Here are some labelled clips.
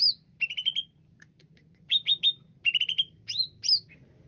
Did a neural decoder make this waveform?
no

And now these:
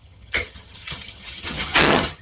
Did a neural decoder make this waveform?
yes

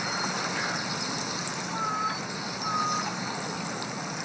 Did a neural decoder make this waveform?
no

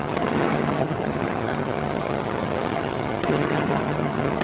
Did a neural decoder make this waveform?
yes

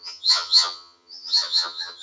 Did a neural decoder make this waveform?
yes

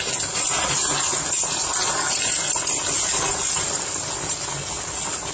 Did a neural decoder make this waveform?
no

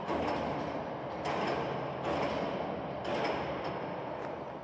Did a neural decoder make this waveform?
no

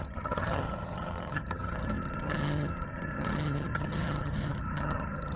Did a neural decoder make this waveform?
yes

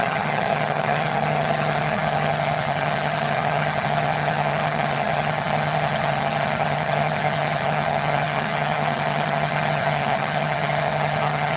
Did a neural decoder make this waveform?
yes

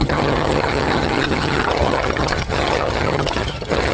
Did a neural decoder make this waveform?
yes